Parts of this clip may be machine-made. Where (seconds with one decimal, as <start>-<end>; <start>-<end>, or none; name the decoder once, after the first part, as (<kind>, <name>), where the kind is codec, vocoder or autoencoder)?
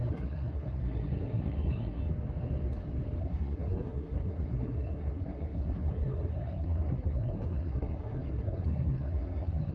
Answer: 0.0-2.0 (codec, SNAC); 3.2-9.7